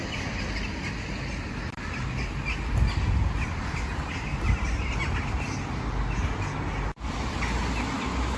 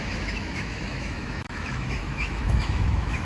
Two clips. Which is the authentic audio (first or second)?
first